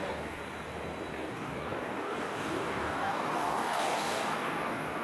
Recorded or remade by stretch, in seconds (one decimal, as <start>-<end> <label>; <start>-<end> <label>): 0.0-0.4 remade; 0.4-1.1 recorded; 1.1-5.0 remade